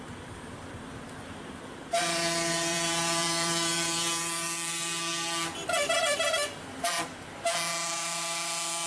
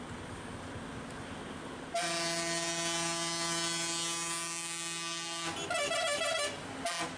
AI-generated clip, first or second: first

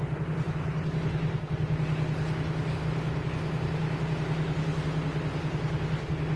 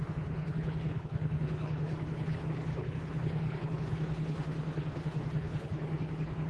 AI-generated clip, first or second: second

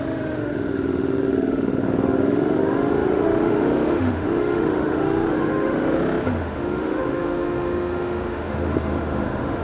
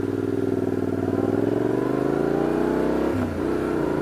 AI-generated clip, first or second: first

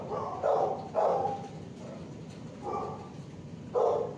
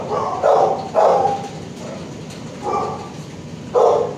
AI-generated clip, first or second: first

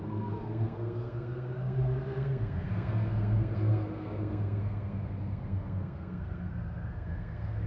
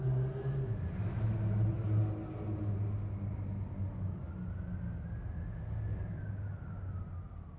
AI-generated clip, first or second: first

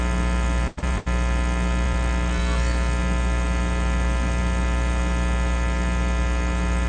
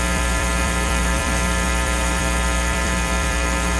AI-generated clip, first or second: second